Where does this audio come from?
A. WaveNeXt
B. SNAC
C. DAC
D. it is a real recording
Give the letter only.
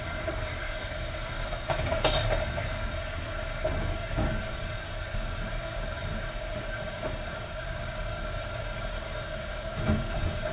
C